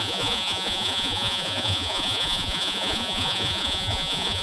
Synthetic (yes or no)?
yes